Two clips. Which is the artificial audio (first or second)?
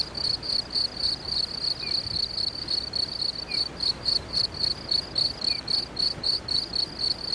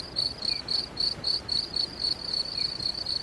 second